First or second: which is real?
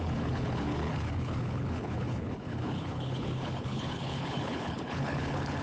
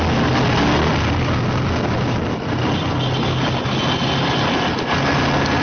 second